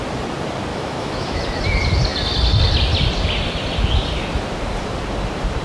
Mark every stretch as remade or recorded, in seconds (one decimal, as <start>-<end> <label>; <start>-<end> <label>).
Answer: 0.0-0.7 recorded; 0.7-1.4 remade; 1.4-5.6 recorded